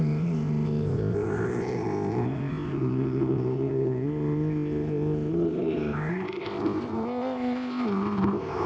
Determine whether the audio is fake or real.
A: fake